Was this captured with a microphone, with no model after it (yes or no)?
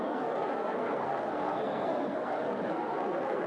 no